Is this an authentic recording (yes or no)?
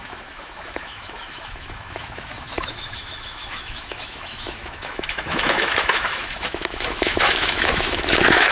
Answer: no